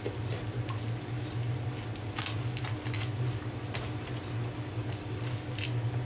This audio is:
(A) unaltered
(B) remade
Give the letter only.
A